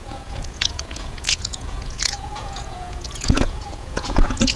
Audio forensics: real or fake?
fake